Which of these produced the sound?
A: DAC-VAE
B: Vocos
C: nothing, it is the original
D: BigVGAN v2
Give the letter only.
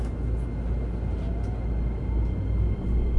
C